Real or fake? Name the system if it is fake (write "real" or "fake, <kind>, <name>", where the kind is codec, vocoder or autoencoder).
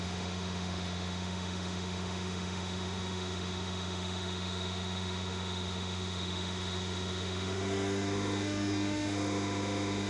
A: fake, autoencoder, DAC-VAE